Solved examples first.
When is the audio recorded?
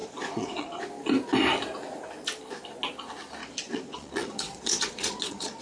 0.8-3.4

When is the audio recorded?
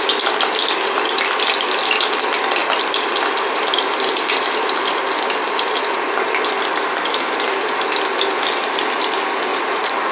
0.0-9.5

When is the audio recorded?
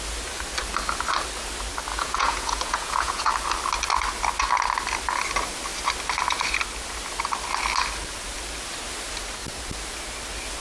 0.0-1.9; 3.3-10.6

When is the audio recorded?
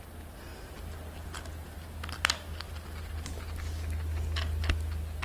0.0-5.2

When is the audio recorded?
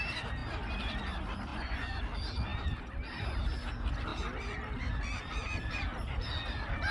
0.0-1.5; 2.0-6.9